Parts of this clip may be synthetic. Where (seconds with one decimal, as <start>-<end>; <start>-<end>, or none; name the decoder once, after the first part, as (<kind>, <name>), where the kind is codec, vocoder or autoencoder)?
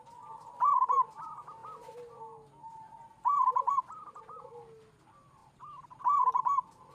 1.6-2.1 (vocoder, BigVGAN v2); 5.4-6.9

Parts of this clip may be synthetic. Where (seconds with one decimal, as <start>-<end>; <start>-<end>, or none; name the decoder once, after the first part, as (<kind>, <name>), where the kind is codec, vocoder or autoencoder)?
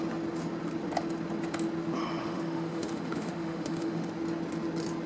2.2-4.1 (autoencoder, DAC-VAE)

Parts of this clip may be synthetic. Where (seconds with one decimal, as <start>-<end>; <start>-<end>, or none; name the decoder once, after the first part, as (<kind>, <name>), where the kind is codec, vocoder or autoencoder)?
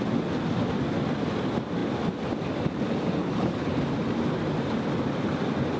3.2-3.7 (codec, HILCodec)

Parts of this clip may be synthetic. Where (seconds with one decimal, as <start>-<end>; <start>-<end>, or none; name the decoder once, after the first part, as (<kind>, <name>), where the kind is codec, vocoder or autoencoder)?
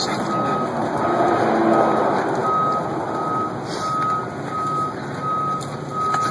0.8-1.4 (vocoder, BigVGAN v2)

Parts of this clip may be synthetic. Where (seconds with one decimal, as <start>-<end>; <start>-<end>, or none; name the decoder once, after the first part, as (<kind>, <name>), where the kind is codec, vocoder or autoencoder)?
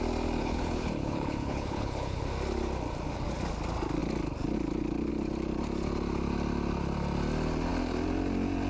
0.4-2.2 (codec, HILCodec)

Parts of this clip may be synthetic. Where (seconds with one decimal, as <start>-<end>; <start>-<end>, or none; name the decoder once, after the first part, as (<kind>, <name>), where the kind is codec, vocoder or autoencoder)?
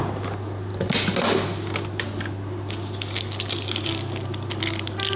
none